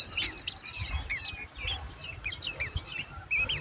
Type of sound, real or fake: real